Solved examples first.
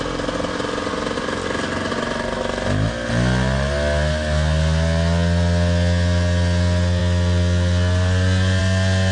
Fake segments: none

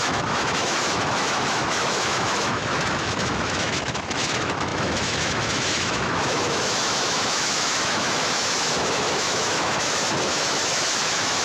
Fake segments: 0.0-11.4

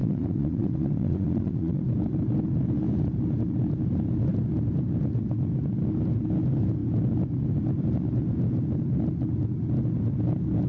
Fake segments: 0.0-1.8

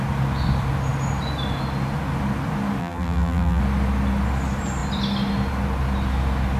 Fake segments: 2.8-3.6

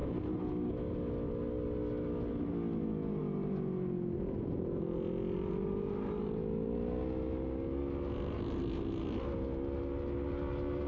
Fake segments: none

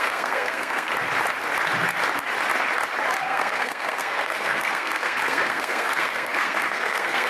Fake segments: 0.0-0.9; 3.2-7.3

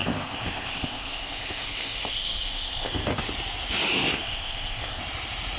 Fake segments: 0.0-3.2; 3.9-5.0

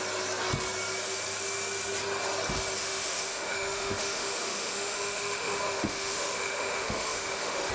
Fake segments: 2.8-7.7